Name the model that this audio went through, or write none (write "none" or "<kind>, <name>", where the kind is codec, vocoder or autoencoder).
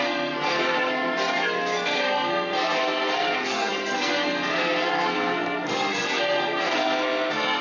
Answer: codec, SNAC